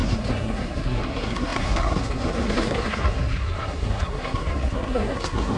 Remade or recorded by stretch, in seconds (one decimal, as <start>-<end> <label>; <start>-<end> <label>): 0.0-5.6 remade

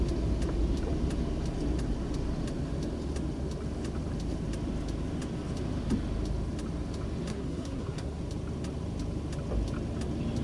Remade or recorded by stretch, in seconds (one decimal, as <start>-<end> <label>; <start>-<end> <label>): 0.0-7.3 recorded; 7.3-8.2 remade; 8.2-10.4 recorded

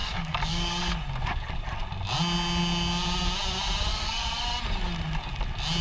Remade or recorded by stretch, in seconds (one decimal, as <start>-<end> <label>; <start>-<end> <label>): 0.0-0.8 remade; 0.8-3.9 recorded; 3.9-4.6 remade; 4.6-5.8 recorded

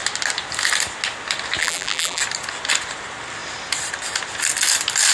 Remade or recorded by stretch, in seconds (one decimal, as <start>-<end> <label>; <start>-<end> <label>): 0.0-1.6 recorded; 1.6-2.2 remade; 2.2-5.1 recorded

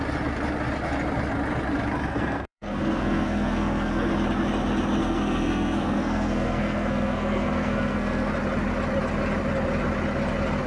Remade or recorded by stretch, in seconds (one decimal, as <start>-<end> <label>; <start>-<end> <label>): 0.0-2.1 recorded; 2.1-4.1 remade; 4.1-5.0 recorded; 5.0-8.3 remade; 8.3-10.7 recorded

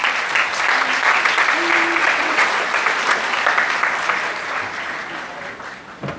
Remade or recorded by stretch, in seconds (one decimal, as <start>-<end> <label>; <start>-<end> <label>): 0.0-2.0 recorded; 2.0-2.5 remade; 2.5-6.2 recorded

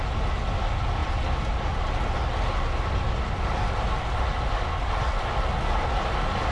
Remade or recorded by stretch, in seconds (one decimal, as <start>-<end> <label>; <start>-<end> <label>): 0.0-6.5 recorded

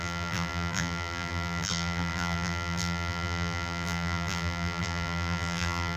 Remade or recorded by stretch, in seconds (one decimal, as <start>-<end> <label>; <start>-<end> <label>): 0.0-6.0 remade